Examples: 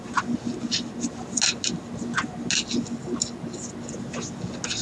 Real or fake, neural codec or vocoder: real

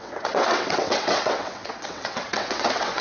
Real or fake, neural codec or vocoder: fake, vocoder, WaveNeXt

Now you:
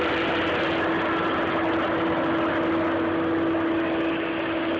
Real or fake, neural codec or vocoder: real